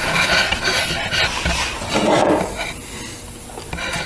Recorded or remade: recorded